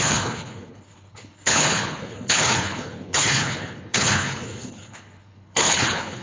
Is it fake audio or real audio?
fake